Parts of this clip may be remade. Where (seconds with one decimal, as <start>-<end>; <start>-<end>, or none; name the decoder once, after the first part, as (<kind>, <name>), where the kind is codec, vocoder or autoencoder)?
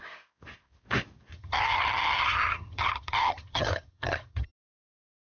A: 1.3-4.5 (vocoder, HiFi-GAN)